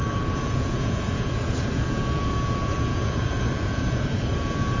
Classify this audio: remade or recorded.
remade